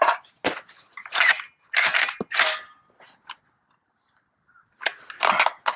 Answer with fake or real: real